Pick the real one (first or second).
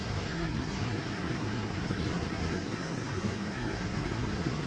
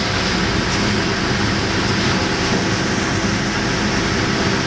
second